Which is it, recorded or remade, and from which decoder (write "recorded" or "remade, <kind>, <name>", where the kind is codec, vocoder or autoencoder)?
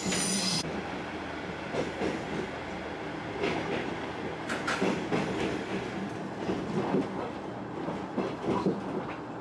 recorded